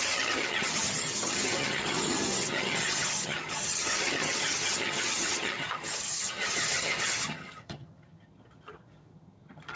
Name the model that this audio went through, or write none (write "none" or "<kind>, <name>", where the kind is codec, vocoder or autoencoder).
vocoder, HiFi-GAN